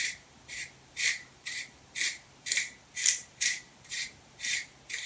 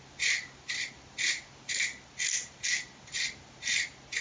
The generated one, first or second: first